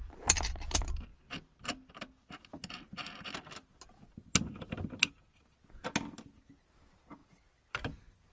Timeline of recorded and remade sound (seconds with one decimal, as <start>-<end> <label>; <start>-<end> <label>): 0.0-7.2 recorded; 7.2-8.3 remade